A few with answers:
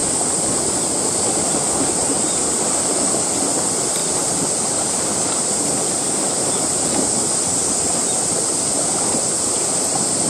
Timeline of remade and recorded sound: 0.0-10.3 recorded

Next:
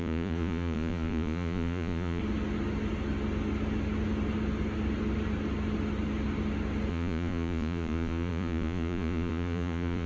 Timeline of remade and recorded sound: 0.0-2.2 remade; 2.2-6.9 recorded; 6.9-10.1 remade

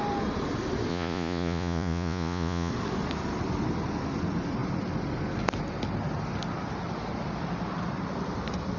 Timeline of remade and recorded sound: 0.0-0.9 recorded; 0.9-2.7 remade; 2.7-8.8 recorded

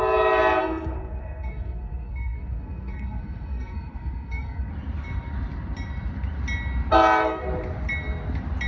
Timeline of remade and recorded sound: 0.0-0.6 recorded; 0.6-4.7 remade; 4.7-8.7 recorded

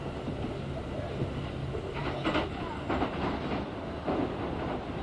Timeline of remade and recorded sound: 0.0-5.0 recorded

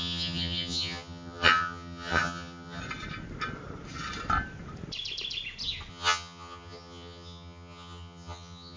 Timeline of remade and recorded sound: 0.0-2.8 remade; 2.8-5.9 recorded; 5.9-8.8 remade

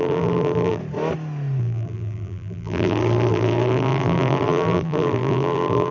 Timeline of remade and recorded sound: 0.0-0.8 remade; 0.8-1.6 recorded; 1.6-5.9 remade